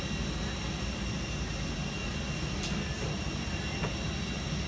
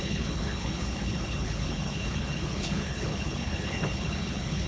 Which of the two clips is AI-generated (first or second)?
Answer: second